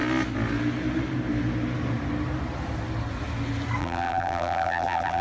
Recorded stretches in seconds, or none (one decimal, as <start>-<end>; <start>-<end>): 0.0-3.8

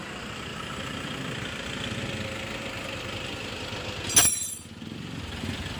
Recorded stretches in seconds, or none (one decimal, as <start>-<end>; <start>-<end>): 0.0-0.5; 3.8-4.2

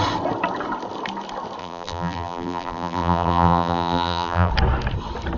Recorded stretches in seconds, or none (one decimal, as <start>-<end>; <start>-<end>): 0.0-1.6; 4.5-5.4

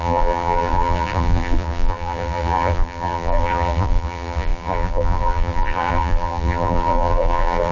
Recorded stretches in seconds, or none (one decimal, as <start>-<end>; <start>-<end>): none

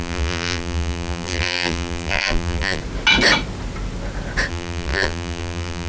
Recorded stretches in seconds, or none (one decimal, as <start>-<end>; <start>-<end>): 2.8-4.5

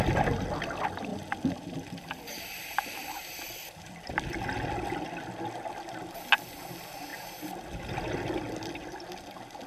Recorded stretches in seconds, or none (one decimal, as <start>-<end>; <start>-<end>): 0.0-1.1; 2.2-3.2; 4.1-9.7